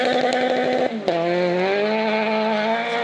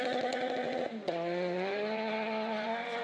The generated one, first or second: second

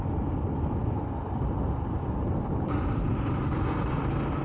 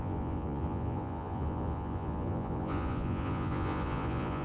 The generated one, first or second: second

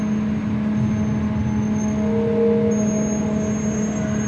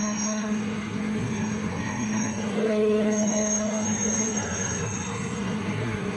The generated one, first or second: second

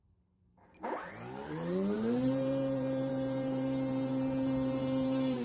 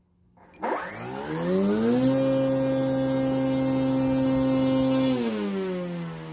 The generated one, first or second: first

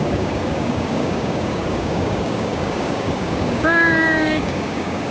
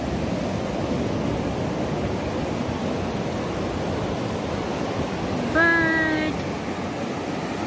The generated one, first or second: first